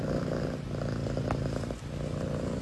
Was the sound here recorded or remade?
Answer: recorded